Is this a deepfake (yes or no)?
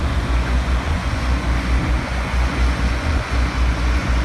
yes